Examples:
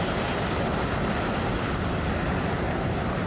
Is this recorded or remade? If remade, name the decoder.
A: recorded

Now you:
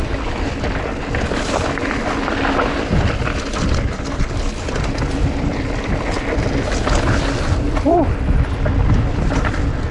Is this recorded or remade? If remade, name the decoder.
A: recorded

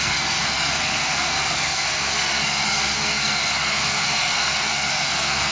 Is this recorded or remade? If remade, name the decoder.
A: remade, codec, SNAC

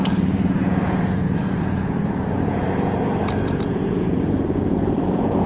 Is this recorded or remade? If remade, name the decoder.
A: remade, vocoder, Vocos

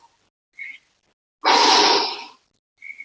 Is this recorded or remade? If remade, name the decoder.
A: recorded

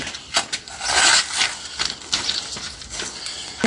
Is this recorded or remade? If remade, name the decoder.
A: recorded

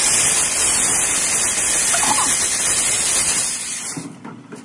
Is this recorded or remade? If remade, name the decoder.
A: recorded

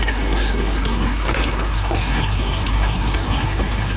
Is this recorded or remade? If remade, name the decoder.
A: remade, codec, SNAC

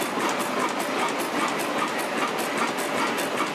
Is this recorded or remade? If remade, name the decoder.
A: recorded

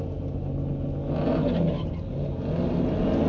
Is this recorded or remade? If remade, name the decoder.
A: recorded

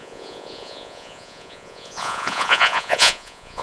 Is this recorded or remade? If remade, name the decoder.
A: remade, vocoder, Vocos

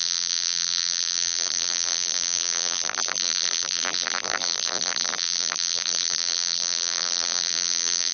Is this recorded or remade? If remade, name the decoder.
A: remade, vocoder, BigVGAN v2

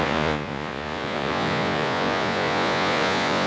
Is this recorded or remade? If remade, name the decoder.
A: remade, vocoder, Vocos